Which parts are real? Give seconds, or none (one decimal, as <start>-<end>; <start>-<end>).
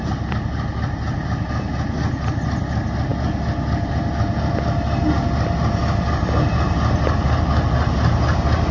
0.0-8.7